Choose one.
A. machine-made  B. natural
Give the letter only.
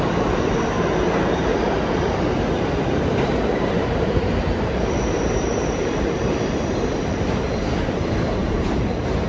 A